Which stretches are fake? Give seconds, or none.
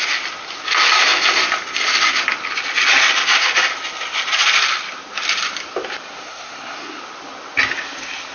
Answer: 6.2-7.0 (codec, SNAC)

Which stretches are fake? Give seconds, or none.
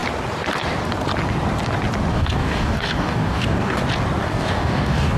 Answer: 2.1-3.8 (codec, DAC); 4.2-5.2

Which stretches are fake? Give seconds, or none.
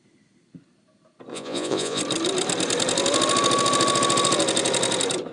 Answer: 1.3-2.0 (vocoder, Vocos)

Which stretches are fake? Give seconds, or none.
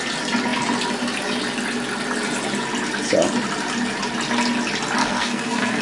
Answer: 5.0-5.8 (codec, SNAC)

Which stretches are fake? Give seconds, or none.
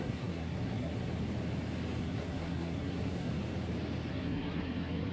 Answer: 0.0-1.1 (codec, SNAC); 2.0-3.3; 4.1-5.1